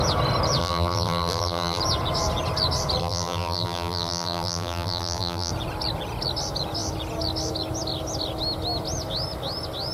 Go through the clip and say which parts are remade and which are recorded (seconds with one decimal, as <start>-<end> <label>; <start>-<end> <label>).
0.0-0.6 recorded; 0.6-1.8 remade; 1.8-3.0 recorded; 3.0-5.5 remade; 5.5-9.9 recorded